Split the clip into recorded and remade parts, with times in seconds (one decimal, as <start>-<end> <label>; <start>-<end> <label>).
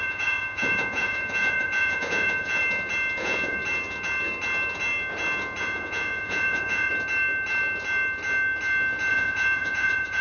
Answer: 0.0-2.6 remade; 2.6-3.2 recorded; 3.2-3.6 remade; 3.6-5.6 recorded; 5.6-6.9 remade; 6.9-9.1 recorded; 9.1-10.2 remade